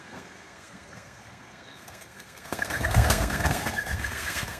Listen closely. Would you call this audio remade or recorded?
remade